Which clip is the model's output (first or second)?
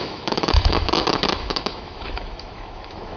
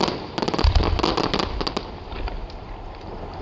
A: first